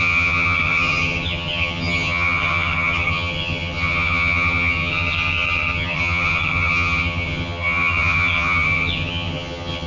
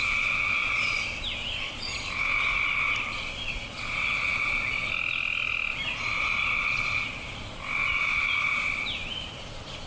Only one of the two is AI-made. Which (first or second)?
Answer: first